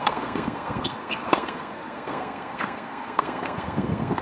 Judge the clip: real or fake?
fake